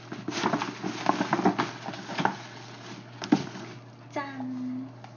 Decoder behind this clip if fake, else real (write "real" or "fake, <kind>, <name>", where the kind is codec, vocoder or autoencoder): real